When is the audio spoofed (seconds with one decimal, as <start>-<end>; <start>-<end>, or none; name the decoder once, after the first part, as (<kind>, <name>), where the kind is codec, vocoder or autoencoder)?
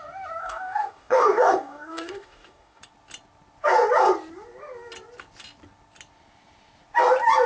0.4-2.8 (codec, DAC)